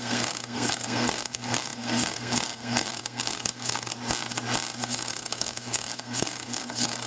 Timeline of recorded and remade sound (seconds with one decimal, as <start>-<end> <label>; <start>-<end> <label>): 0.0-3.9 remade; 3.9-4.8 recorded; 4.8-7.1 remade